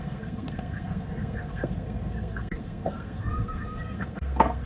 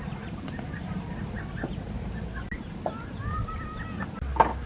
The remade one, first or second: first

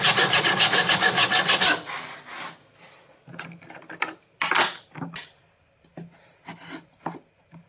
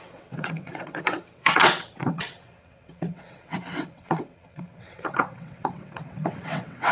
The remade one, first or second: second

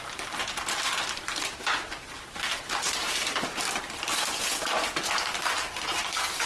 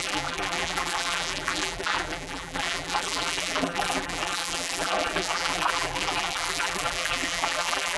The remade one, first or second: second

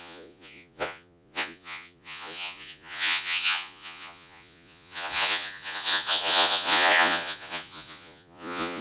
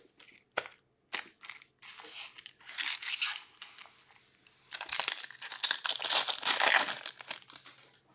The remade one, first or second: first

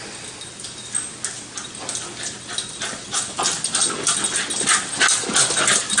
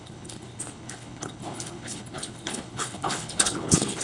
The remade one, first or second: second